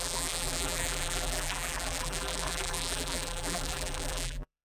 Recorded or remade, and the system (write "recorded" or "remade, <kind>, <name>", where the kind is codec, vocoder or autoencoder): remade, vocoder, BigVGAN v2